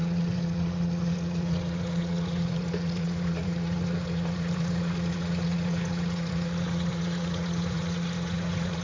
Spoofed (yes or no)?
yes